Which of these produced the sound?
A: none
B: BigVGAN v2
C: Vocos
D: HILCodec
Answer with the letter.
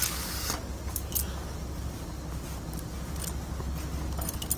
A